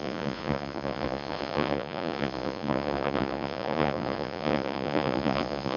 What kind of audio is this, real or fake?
fake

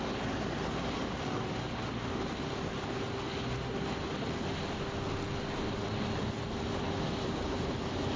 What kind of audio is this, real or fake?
real